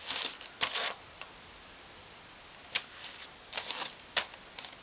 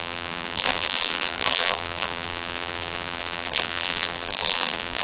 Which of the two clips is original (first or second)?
first